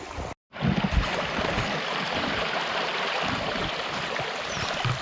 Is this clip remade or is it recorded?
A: recorded